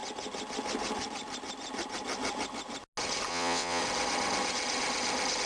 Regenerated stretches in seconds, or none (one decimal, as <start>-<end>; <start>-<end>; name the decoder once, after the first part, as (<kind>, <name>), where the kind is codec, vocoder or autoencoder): 3.3-3.8 (vocoder, WaveNeXt)